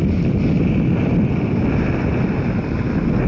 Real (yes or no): yes